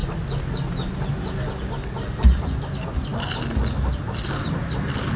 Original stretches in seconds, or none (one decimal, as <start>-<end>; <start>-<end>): 0.0-5.2